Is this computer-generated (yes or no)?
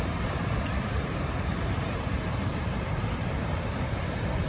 yes